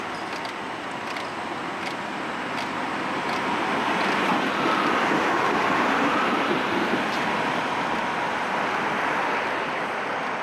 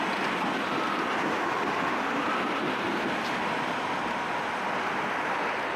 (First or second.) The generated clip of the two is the first